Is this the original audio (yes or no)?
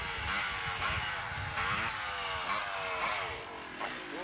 yes